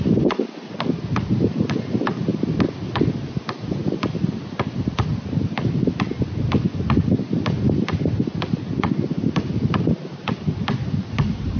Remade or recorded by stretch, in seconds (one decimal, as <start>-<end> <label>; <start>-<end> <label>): 0.0-11.6 recorded